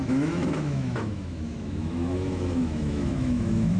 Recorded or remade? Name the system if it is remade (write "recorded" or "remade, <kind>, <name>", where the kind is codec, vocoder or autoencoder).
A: remade, autoencoder, DAC-VAE